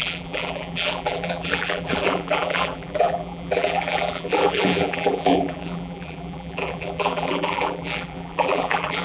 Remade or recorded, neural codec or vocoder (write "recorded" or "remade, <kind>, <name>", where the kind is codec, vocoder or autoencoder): remade, vocoder, BigVGAN v2